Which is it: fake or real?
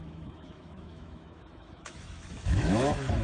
fake